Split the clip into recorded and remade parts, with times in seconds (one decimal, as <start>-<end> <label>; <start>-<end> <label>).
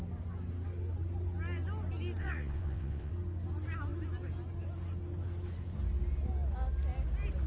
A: 0.0-2.2 recorded; 2.2-3.1 remade; 3.1-7.5 recorded